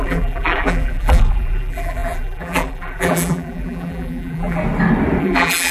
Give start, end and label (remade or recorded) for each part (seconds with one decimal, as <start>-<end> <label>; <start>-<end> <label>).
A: 0.0-4.6 remade; 4.6-5.2 recorded; 5.2-5.7 remade